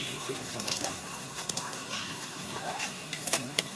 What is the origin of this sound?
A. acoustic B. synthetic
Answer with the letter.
B